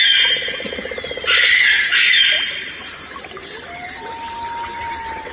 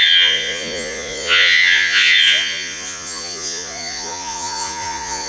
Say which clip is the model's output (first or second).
second